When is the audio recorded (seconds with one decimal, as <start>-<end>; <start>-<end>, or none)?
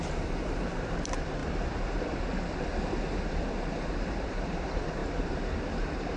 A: 1.4-3.7; 5.0-5.7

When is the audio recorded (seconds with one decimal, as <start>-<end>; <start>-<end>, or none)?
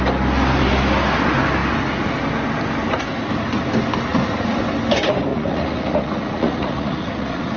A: 0.0-4.1; 4.6-5.3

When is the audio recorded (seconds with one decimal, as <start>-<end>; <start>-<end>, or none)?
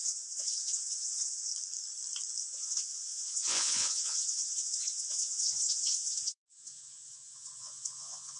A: 1.5-2.4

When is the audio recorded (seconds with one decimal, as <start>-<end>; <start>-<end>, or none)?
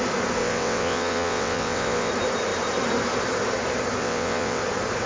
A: 0.0-0.4; 2.1-4.0; 4.6-5.1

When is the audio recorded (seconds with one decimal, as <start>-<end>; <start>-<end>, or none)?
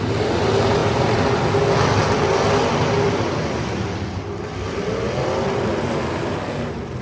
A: 0.0-0.8; 1.5-2.0; 5.7-7.0